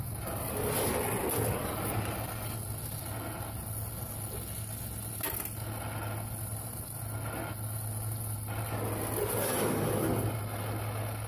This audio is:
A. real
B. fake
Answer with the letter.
A